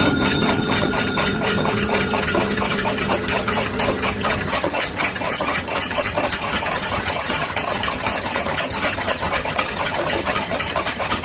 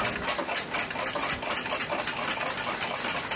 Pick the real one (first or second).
second